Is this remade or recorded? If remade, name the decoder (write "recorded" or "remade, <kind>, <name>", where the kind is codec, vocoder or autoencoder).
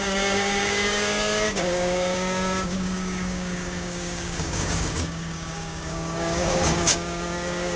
remade, codec, DAC